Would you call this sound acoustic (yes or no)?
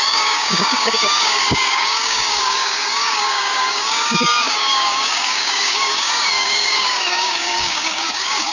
no